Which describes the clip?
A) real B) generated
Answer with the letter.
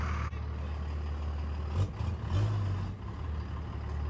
A